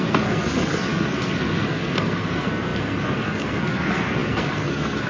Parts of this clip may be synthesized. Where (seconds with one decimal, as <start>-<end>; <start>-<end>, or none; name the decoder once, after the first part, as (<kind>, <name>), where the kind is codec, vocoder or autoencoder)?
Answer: 0.0-5.1 (codec, SNAC)